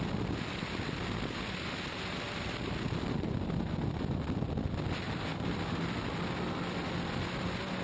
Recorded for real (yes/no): yes